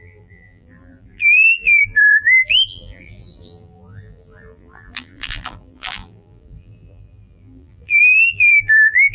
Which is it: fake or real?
fake